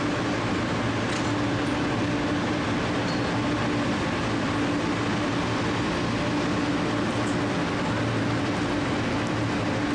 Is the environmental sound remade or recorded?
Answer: recorded